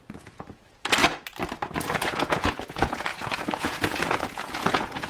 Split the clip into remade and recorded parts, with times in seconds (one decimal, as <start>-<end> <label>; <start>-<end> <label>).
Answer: 0.0-1.0 remade; 1.0-1.7 recorded; 1.7-5.1 remade